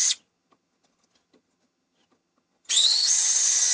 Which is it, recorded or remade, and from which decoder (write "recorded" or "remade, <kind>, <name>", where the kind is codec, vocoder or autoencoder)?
remade, vocoder, HiFi-GAN